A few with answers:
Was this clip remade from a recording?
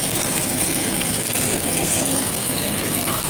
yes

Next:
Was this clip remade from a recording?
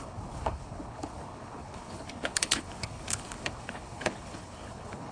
yes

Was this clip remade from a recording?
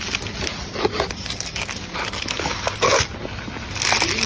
no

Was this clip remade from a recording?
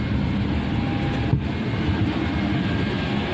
no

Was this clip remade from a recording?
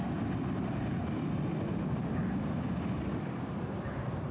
yes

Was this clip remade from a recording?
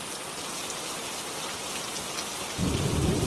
no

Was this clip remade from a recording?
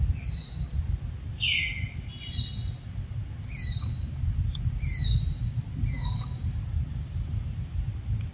no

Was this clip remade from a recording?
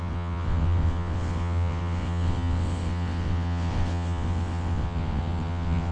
yes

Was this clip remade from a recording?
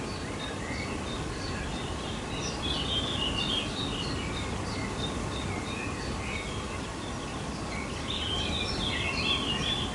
no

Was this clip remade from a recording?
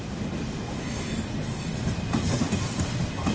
no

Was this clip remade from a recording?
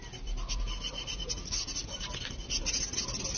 no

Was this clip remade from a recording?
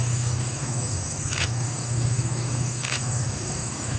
yes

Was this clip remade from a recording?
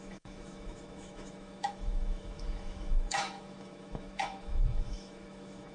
yes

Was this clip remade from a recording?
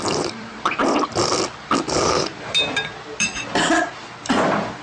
yes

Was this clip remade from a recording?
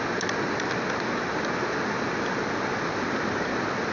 no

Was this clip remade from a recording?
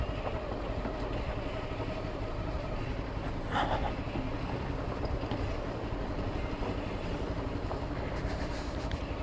no